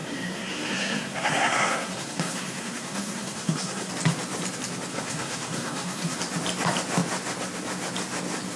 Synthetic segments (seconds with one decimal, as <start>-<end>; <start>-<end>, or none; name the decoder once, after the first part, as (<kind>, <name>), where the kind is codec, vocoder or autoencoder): 0.0-3.9 (codec, SNAC); 4.9-6.2